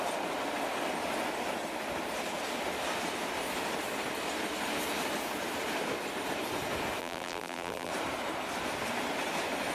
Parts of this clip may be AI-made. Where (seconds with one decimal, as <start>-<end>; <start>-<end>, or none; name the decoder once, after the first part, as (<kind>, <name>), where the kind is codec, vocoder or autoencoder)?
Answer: 7.0-7.9 (vocoder, BigVGAN v2)